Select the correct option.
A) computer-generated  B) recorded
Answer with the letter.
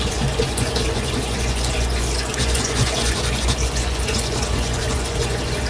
A